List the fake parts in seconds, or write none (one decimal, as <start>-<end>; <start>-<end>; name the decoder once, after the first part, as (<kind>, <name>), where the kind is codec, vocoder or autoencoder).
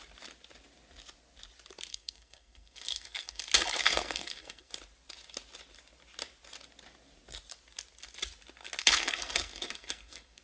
1.9-3.4 (codec, SNAC); 3.8-4.7; 8.8-10.4